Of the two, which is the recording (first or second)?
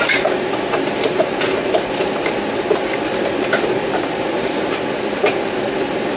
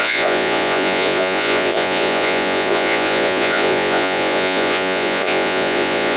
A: first